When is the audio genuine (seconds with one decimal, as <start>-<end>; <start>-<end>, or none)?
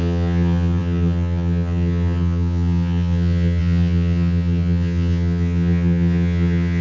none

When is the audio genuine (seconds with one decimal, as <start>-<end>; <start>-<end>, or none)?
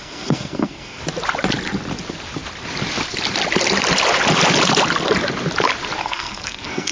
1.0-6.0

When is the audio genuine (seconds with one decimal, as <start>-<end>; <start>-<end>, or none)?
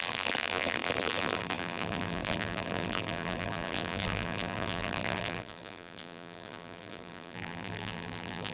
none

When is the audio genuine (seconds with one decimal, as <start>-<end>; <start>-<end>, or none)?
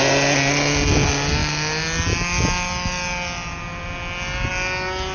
0.0-5.1